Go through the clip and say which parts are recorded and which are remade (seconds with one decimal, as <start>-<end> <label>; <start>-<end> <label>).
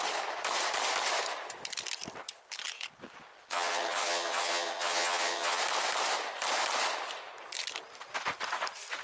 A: 0.0-3.5 recorded; 3.5-5.6 remade; 5.6-9.0 recorded